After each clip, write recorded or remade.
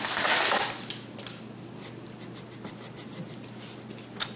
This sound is recorded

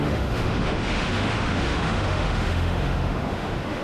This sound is remade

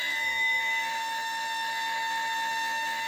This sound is remade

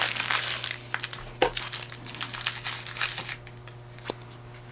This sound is recorded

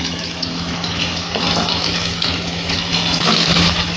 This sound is remade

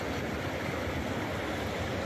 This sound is recorded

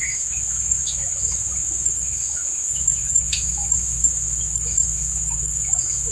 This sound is remade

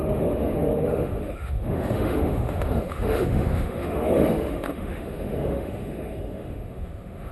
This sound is remade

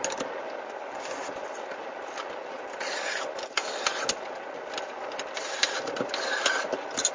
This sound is recorded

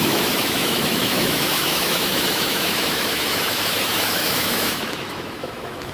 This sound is remade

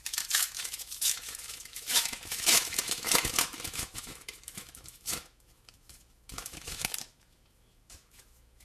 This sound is remade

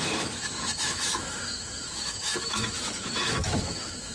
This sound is remade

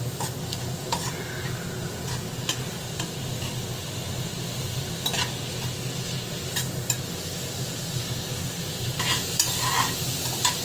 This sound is recorded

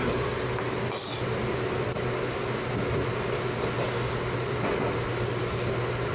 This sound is recorded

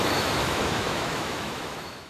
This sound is remade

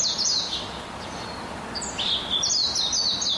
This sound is recorded